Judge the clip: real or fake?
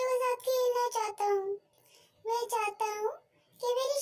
real